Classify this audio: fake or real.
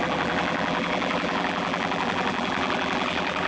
fake